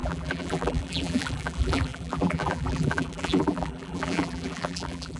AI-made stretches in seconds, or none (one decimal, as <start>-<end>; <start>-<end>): 0.0-5.2